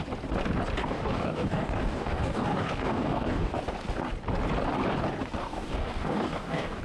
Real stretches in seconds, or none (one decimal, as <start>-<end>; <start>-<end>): 0.0-0.8; 3.5-5.4